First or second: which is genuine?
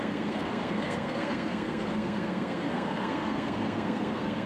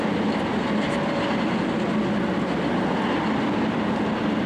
second